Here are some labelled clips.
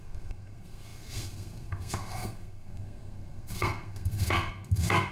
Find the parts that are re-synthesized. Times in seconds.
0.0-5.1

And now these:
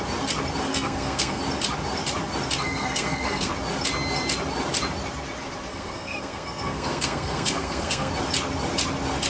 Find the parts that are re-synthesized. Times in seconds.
0.7-1.4; 2.6-3.5; 5.7-8.1